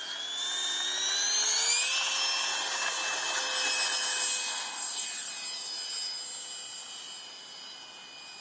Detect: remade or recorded recorded